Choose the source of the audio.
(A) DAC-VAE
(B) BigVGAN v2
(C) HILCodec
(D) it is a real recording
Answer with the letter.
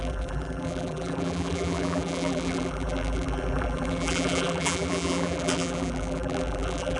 B